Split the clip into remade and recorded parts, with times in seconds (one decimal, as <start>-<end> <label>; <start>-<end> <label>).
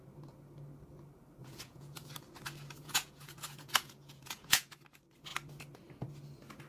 0.0-1.4 recorded; 1.4-2.1 remade; 2.1-2.8 recorded; 2.8-4.7 remade; 4.7-6.7 recorded